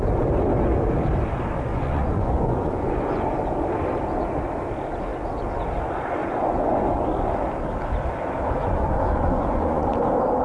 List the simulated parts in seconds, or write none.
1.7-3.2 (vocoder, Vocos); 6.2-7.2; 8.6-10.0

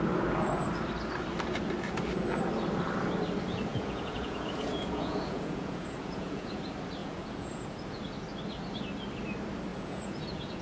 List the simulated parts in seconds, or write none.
3.7-6.6 (vocoder, Vocos); 7.0-8.0; 9.7-10.6